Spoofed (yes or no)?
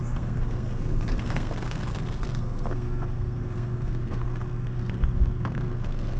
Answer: yes